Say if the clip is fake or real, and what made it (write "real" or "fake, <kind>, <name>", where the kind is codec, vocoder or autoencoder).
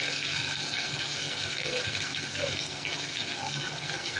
fake, codec, SNAC